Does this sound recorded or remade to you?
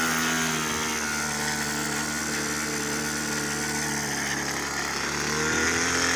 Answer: recorded